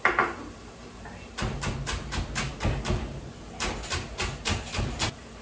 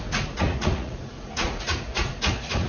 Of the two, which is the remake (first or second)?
second